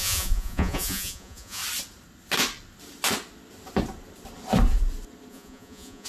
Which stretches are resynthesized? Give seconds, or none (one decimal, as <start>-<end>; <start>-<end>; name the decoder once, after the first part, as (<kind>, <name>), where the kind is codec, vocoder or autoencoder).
0.0-1.6 (vocoder, Vocos); 5.3-6.1